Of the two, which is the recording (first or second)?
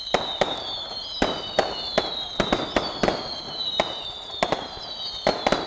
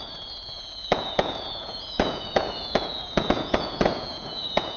first